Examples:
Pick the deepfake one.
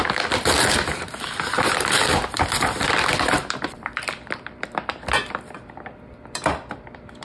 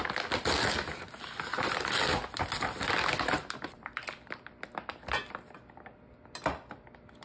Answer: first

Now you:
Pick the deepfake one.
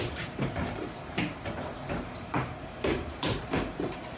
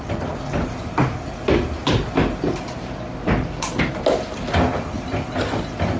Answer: first